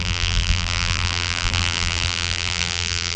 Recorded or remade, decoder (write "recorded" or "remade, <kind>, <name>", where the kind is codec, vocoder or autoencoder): remade, vocoder, BigVGAN v2